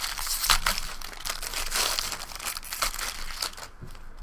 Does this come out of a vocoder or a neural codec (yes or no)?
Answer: no